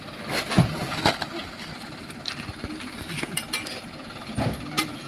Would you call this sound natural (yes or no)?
yes